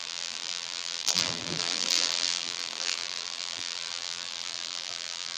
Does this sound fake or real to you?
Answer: fake